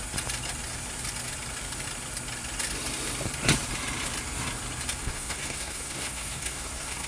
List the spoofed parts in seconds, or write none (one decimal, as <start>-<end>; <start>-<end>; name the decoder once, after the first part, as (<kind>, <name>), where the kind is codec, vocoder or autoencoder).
5.0-7.1 (codec, SNAC)